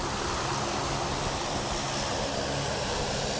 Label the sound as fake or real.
real